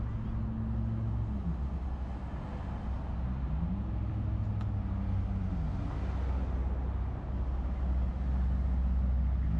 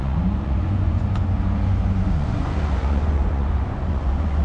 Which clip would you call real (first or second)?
first